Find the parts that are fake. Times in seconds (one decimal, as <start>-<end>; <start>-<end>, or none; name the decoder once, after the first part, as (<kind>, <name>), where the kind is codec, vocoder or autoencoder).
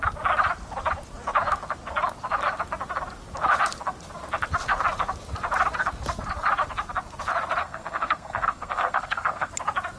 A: 7.6-9.5 (codec, SNAC)